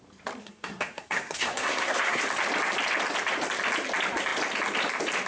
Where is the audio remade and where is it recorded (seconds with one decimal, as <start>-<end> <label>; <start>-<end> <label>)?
0.0-0.4 recorded; 0.4-2.2 remade; 2.2-5.3 recorded